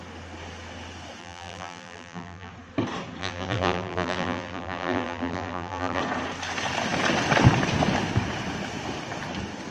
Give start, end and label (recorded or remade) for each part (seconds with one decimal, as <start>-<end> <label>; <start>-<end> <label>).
0.0-1.2 recorded; 1.2-2.5 remade; 2.5-3.2 recorded; 3.2-6.0 remade; 6.0-9.7 recorded